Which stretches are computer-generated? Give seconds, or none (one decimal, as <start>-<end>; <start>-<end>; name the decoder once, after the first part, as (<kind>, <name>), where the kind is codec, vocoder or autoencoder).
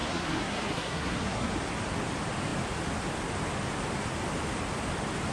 0.0-1.5 (codec, SNAC)